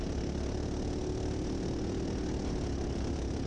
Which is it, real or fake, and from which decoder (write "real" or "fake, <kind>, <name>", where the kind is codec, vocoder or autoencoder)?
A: real